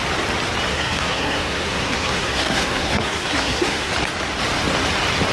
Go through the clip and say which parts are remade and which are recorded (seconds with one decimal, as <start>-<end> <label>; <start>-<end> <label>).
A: 0.0-0.7 recorded; 0.7-3.9 remade; 3.9-5.3 recorded